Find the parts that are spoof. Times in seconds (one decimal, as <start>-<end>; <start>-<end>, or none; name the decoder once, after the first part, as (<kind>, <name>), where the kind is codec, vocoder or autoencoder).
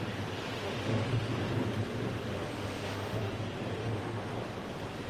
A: 0.6-1.3 (autoencoder, DAC-VAE); 2.3-3.3; 3.8-4.3